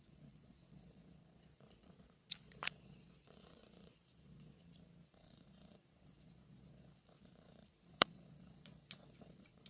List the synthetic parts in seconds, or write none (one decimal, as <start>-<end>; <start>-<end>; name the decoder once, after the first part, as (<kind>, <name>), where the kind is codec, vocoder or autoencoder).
0.0-4.6 (vocoder, Vocos); 5.1-9.7